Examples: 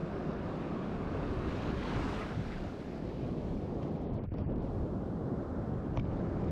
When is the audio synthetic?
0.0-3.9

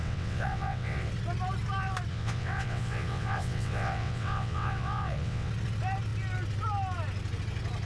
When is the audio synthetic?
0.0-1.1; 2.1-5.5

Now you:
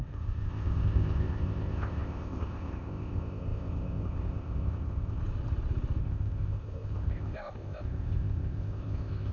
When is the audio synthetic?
0.0-5.2; 6.0-9.3